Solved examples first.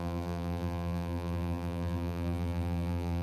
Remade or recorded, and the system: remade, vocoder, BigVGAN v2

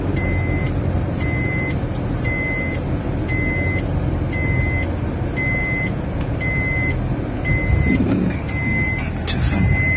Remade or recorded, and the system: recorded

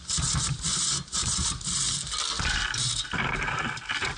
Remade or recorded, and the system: recorded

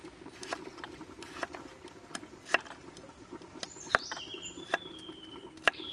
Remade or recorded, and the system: recorded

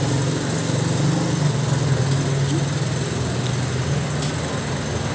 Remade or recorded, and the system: recorded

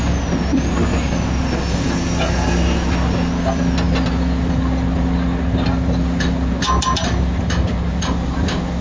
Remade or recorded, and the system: recorded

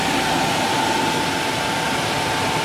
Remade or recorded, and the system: recorded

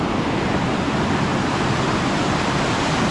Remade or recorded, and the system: recorded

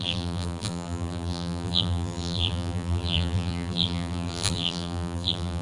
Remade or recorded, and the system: remade, vocoder, BigVGAN v2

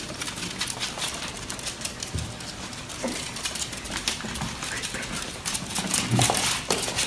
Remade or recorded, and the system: recorded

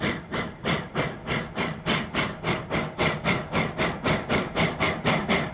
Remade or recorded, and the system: recorded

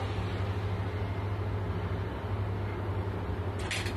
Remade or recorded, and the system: recorded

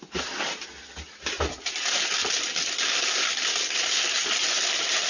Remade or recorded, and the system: recorded